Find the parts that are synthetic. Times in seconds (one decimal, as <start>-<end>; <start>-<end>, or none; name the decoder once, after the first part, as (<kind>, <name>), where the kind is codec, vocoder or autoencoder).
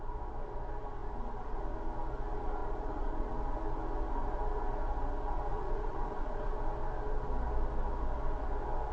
2.6-3.3 (vocoder, Vocos); 5.5-6.5